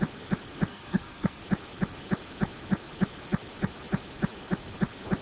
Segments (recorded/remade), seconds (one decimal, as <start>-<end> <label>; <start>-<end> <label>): 0.0-0.7 recorded; 0.7-1.4 remade; 1.4-5.2 recorded